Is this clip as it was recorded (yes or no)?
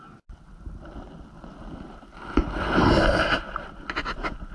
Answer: yes